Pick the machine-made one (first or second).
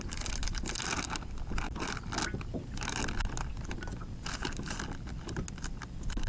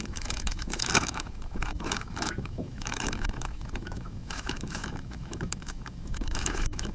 second